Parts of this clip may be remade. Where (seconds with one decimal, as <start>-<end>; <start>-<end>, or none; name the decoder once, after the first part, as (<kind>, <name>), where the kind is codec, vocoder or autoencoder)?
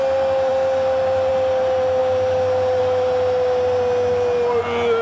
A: none